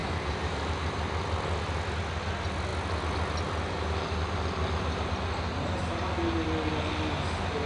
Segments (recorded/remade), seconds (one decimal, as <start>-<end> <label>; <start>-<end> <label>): 0.0-1.1 remade; 1.1-7.7 recorded